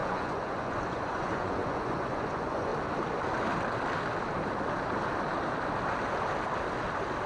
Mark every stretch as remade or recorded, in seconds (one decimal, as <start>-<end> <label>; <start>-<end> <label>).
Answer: 0.0-2.7 remade; 2.7-7.3 recorded